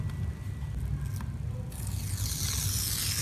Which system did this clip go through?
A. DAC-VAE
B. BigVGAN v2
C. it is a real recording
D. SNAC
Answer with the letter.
C